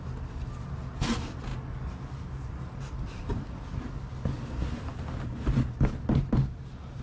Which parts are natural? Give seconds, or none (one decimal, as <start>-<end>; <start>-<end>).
0.0-7.0